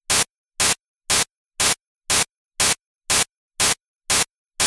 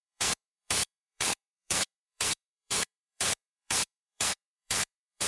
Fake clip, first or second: second